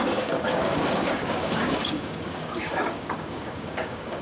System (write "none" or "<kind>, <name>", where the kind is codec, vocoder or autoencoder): codec, DAC